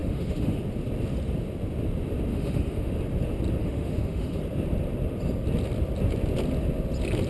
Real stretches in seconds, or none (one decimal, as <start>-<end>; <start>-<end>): 0.6-2.3; 2.9-3.6; 4.4-7.3